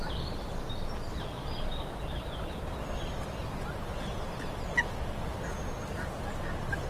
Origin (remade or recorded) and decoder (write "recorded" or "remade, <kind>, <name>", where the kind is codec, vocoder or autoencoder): recorded